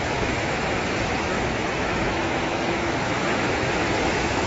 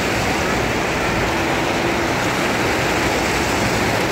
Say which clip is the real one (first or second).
second